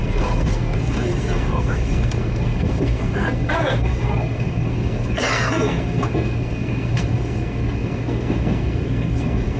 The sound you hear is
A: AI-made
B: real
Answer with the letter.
A